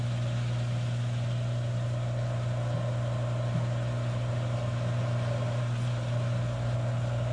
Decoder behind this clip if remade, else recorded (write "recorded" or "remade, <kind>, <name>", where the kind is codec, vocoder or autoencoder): recorded